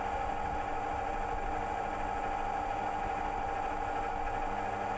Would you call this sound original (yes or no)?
yes